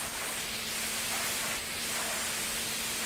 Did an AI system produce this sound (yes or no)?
no